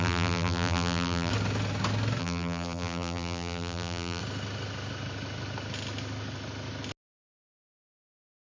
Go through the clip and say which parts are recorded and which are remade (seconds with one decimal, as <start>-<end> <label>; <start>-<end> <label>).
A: 0.0-1.3 remade; 1.3-2.2 recorded; 2.2-4.2 remade; 4.2-7.9 recorded; 7.9-8.5 remade